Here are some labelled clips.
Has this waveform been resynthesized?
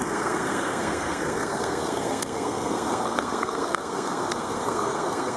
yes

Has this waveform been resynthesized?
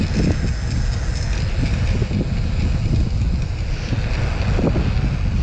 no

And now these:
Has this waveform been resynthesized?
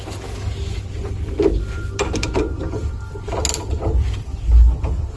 no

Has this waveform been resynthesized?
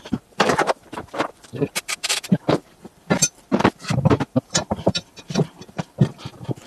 yes